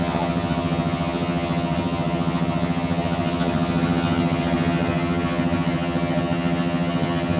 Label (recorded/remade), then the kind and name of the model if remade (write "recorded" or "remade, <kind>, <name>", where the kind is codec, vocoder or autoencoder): remade, vocoder, HiFi-GAN